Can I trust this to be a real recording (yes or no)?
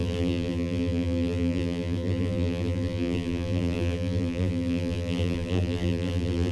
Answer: no